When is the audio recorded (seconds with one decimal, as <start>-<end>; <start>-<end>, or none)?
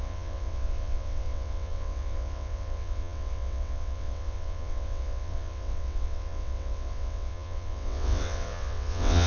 none